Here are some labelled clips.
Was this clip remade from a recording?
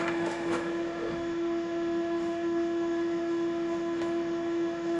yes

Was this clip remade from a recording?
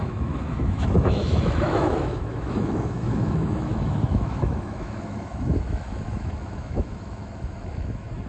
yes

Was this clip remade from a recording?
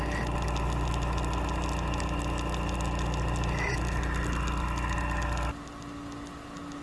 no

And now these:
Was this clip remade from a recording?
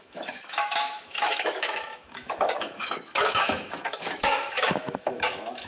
yes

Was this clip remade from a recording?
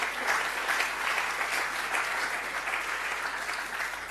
no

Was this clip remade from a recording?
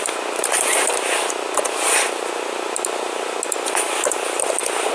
no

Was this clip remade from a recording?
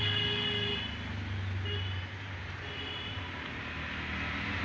no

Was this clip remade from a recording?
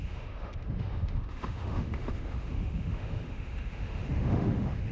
yes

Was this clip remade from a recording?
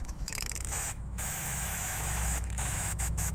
yes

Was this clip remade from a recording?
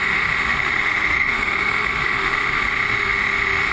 yes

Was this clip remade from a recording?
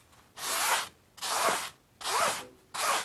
no